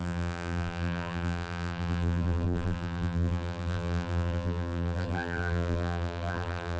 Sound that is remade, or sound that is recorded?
remade